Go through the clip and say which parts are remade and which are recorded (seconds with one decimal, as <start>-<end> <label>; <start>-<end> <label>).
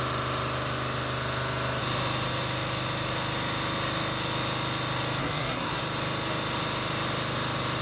0.0-5.2 recorded; 5.2-5.8 remade; 5.8-7.8 recorded